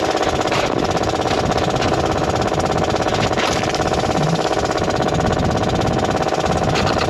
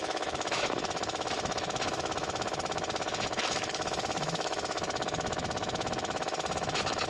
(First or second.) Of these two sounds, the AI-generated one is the second